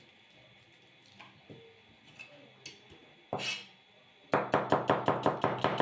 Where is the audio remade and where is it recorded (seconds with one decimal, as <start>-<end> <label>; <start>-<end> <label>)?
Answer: 0.0-5.8 recorded